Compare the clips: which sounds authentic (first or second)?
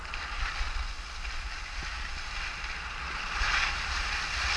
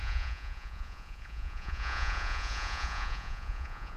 first